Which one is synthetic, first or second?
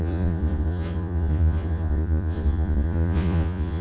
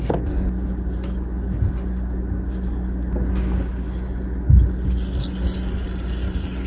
first